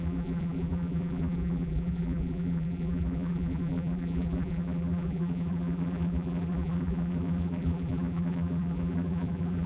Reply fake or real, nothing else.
fake